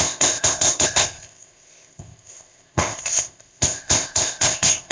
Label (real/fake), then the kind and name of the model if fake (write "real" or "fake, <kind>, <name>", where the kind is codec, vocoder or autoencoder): fake, codec, ZipCodec